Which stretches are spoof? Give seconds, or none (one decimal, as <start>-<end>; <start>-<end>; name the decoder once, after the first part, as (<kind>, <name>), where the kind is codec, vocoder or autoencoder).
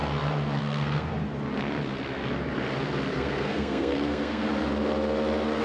0.6-1.1 (codec, SNAC); 3.1-4.5